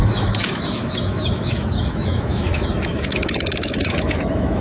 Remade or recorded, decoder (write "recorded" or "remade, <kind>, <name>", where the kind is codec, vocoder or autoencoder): remade, autoencoder, DAC-VAE